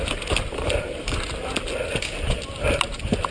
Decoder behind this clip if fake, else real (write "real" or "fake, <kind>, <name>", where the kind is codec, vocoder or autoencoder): real